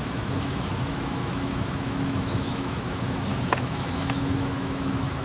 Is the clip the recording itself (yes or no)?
no